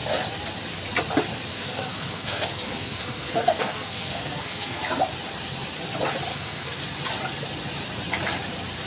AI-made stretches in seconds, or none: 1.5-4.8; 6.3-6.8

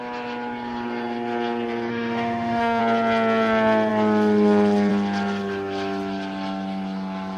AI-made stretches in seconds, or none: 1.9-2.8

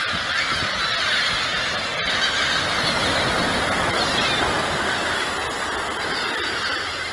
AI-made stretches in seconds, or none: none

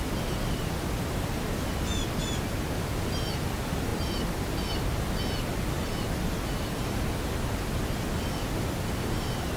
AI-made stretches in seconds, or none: none